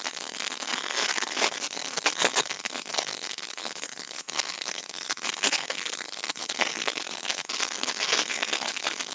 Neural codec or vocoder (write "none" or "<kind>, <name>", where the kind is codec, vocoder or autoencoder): codec, SNAC